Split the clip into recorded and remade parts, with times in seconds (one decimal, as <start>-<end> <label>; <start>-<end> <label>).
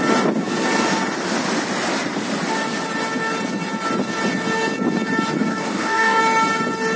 0.0-5.5 recorded; 5.5-6.2 remade; 6.2-7.0 recorded